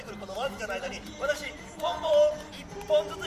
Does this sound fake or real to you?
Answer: fake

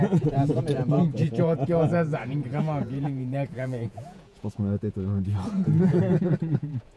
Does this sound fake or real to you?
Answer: fake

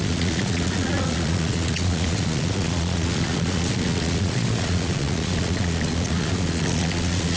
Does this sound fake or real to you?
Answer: fake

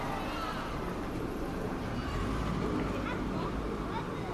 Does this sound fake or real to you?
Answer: real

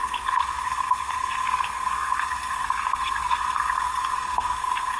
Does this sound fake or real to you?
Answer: fake